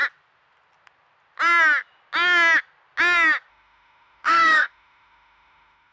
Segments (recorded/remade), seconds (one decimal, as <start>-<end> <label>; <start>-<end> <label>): 0.0-3.5 recorded; 3.5-5.9 remade